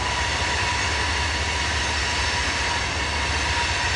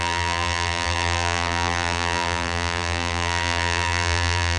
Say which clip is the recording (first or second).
first